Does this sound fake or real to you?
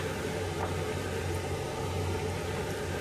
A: real